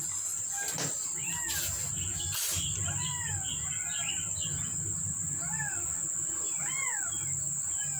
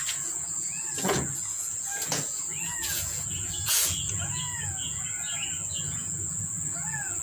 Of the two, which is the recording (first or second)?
first